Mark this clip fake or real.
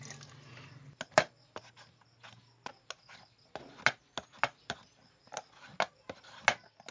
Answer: real